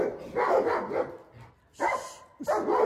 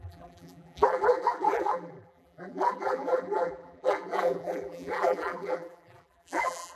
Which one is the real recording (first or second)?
first